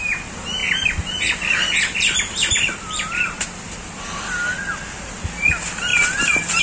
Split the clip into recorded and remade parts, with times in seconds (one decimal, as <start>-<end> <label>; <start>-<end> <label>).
0.0-6.6 recorded